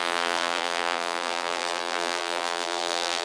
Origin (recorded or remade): remade